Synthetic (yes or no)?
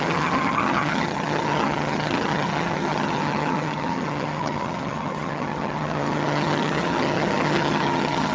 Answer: yes